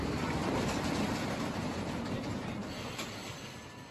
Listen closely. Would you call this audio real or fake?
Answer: fake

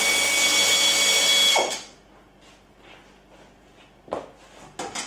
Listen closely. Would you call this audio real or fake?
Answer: real